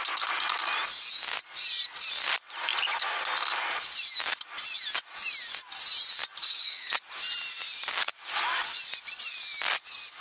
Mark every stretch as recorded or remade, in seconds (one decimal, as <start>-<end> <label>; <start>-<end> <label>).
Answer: 0.0-6.4 recorded; 6.4-6.9 remade; 6.9-10.2 recorded